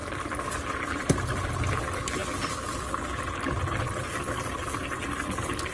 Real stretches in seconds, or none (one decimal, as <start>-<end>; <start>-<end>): 0.0-5.7